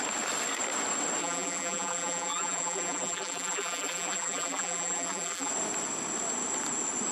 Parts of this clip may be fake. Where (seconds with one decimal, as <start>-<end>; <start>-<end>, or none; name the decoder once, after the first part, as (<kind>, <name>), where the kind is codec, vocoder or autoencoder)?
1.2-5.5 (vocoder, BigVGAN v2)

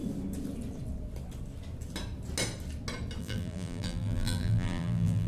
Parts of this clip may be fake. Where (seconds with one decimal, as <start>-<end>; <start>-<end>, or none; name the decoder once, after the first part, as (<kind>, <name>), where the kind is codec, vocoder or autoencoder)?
3.2-5.3 (vocoder, BigVGAN v2)

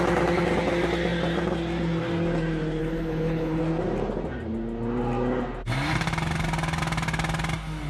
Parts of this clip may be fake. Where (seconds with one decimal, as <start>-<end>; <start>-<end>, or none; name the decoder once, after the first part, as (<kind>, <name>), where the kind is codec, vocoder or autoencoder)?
2.8-3.6 (codec, HILCodec)

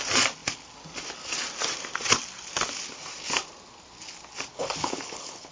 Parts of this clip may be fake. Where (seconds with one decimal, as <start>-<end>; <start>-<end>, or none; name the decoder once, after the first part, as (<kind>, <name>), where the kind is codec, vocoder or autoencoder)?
4.5-5.5 (codec, HILCodec)

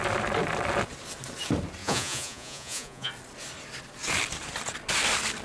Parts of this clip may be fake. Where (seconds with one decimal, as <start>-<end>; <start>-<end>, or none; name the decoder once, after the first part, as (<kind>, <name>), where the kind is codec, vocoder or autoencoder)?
1.8-3.1 (vocoder, Vocos)

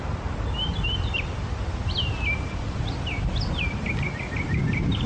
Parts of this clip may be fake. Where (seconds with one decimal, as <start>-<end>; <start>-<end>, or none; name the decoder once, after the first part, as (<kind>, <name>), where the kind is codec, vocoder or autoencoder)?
none